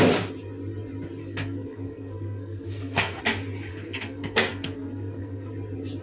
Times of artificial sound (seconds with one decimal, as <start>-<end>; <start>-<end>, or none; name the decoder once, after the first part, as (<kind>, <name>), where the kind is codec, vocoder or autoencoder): 1.2-3.2 (codec, SNAC); 3.7-5.5